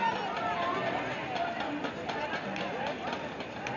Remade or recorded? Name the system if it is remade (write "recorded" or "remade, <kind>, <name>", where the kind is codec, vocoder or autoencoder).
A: recorded